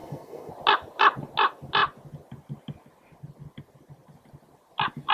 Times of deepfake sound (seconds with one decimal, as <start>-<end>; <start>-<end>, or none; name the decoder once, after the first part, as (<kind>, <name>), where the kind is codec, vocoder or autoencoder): 0.0-0.5 (codec, SNAC)